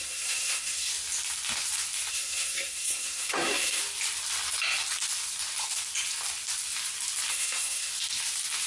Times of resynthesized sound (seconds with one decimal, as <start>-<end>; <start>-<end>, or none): 0.0-0.9; 2.1-3.8; 7.3-7.9